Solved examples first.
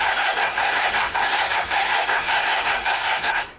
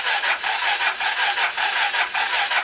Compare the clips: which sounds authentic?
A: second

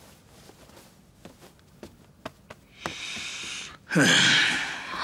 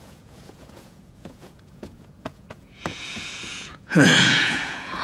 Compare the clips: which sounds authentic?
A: first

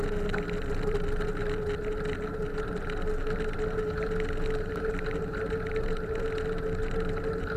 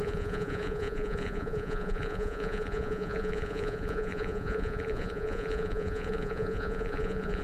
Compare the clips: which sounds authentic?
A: first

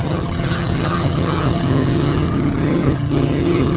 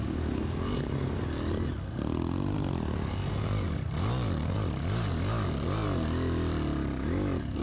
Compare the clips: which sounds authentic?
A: second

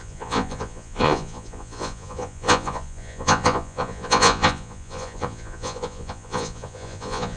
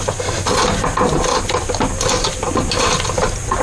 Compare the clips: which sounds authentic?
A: second